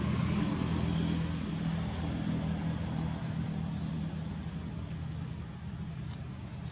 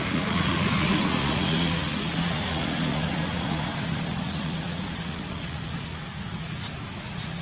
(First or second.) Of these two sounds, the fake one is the second